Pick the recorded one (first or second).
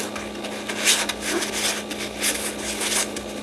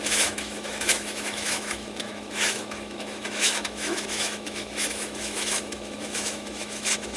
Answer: first